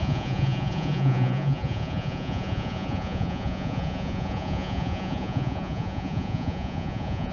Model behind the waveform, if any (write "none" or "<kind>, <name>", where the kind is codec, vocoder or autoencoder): vocoder, Vocos